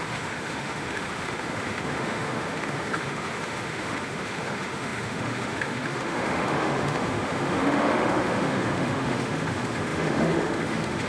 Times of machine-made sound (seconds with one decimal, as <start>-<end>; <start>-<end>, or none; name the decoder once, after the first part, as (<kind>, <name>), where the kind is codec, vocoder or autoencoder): 0.0-11.1 (autoencoder, DAC-VAE)